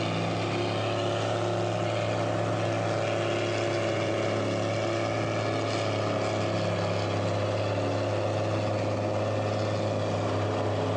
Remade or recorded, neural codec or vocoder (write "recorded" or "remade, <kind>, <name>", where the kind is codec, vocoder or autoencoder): recorded